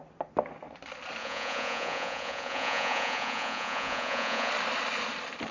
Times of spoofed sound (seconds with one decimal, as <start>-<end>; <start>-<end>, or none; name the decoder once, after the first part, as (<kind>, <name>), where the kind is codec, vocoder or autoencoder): 1.2-4.5 (vocoder, Vocos)